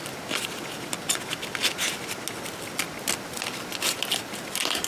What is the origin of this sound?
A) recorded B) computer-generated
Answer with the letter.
A